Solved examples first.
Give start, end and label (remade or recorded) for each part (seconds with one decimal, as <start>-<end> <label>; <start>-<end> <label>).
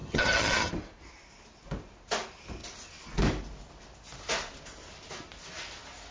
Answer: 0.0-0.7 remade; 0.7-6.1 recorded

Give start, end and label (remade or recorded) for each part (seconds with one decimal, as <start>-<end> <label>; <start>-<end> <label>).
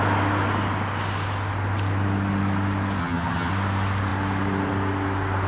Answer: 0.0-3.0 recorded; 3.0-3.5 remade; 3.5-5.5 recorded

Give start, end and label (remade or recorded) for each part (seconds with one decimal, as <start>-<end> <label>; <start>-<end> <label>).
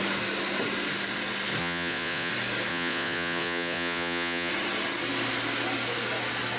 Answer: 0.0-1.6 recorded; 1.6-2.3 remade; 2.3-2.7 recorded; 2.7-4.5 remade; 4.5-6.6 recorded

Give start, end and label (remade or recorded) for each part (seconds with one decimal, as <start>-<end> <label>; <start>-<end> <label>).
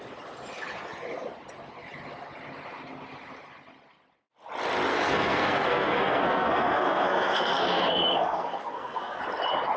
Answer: 0.0-4.9 recorded; 4.9-9.2 remade; 9.2-9.8 recorded